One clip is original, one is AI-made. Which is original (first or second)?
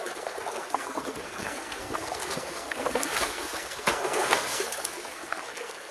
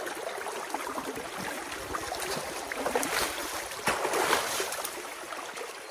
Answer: second